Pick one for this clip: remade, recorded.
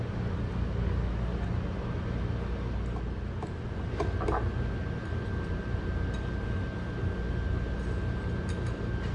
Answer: recorded